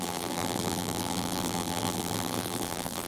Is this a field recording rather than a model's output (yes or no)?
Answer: no